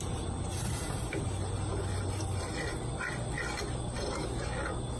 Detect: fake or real real